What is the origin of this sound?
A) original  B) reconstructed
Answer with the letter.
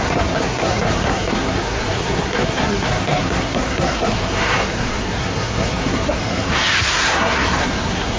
B